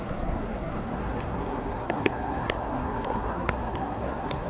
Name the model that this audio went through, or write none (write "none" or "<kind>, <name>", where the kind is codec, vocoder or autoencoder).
codec, SNAC